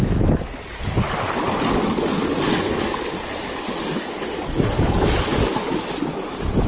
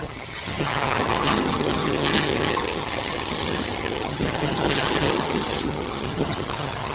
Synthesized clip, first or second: second